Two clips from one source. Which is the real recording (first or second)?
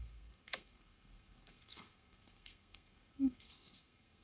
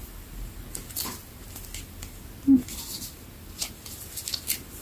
second